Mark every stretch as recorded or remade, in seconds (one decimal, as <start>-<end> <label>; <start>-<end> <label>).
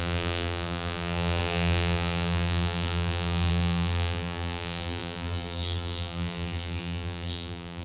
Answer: 0.0-7.8 remade